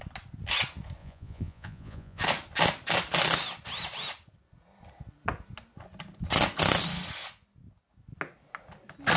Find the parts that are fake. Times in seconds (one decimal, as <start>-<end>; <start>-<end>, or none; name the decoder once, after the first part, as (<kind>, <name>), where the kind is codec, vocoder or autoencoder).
1.0-2.2 (vocoder, Vocos)